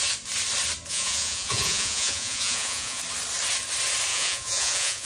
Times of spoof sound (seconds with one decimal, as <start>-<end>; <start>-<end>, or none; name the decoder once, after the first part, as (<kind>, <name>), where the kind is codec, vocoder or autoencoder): 0.9-3.0 (vocoder, Vocos); 4.1-5.1